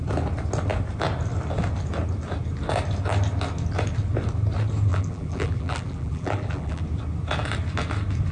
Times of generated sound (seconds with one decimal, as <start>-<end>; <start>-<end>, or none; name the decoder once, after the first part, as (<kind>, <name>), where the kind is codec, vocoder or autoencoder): 4.9-6.8 (vocoder, BigVGAN v2)